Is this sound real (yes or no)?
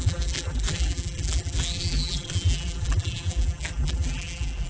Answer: no